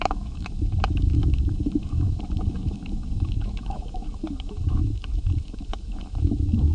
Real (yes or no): no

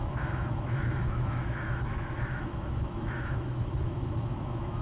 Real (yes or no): no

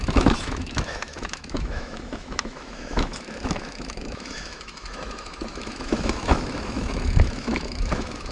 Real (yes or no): no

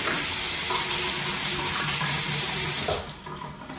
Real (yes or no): yes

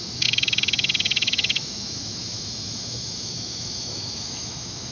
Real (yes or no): no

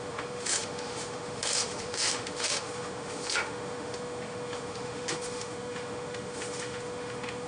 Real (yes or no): no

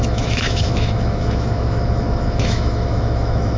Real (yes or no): no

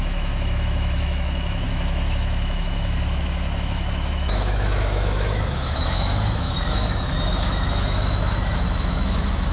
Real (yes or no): no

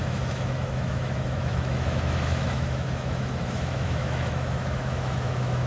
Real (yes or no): no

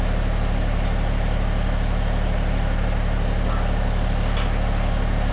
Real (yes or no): yes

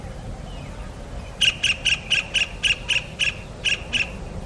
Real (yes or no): yes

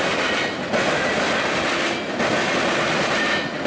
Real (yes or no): yes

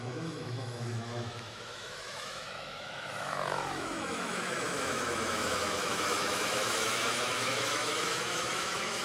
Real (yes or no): no